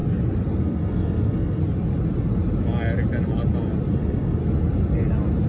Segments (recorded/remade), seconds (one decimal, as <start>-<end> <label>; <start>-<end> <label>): 0.0-0.6 recorded; 0.6-1.6 remade; 1.6-3.9 recorded; 3.9-4.4 remade; 4.4-5.5 recorded